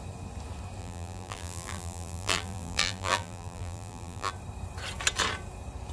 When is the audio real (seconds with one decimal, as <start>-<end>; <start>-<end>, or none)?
0.0-0.8; 4.3-5.9